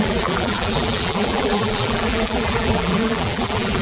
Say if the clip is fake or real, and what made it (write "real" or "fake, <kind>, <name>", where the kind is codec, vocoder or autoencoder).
fake, vocoder, BigVGAN v2